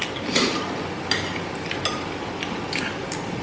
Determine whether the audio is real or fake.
real